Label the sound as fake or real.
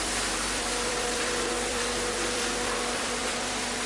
fake